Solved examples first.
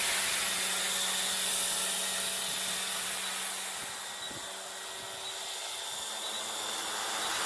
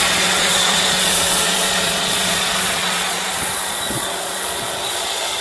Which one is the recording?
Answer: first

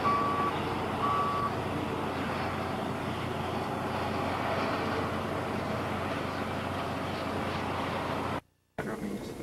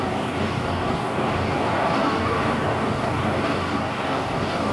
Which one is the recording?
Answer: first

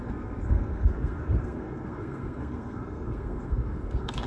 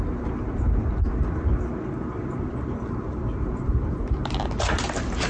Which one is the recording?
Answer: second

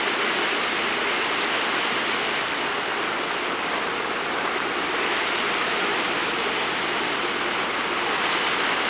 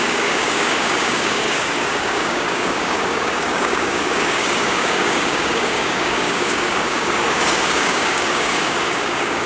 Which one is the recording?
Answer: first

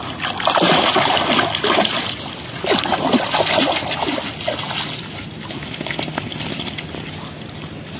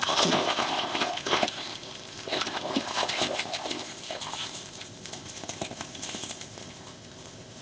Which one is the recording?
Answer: first